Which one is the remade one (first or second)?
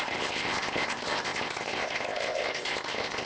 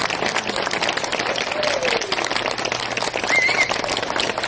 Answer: first